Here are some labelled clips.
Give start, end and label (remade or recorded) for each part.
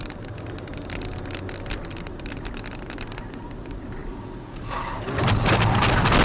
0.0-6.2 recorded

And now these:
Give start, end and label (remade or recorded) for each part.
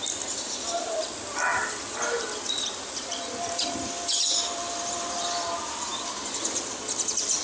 0.0-7.4 recorded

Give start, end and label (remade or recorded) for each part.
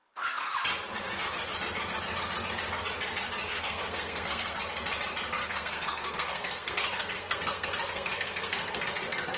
0.0-3.5 recorded; 3.5-4.6 remade; 4.6-5.4 recorded; 5.4-8.8 remade; 8.8-9.4 recorded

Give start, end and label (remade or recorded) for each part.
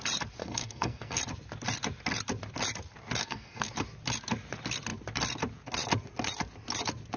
0.0-0.4 recorded; 0.4-1.2 remade; 1.2-3.2 recorded; 3.2-3.7 remade; 3.7-7.2 recorded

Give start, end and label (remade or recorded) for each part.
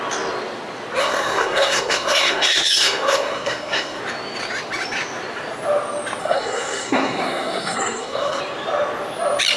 0.0-1.0 recorded; 1.0-4.0 remade; 4.0-6.2 recorded; 6.2-8.4 remade; 8.4-9.6 recorded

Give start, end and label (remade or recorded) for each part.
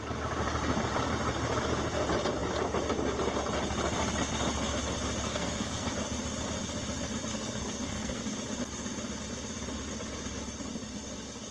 0.0-5.3 recorded; 5.3-5.9 remade; 5.9-7.3 recorded; 7.3-8.2 remade; 8.2-11.5 recorded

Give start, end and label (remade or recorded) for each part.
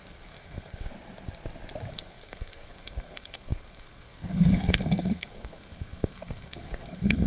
0.0-0.9 remade; 0.9-1.9 recorded; 1.9-7.3 remade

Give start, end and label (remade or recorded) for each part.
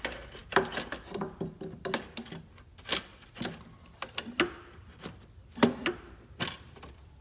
0.0-7.2 recorded